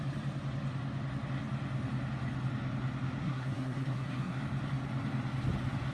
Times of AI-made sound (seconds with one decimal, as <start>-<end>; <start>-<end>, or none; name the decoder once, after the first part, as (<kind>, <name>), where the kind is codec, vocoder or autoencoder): 3.2-4.4 (codec, SNAC)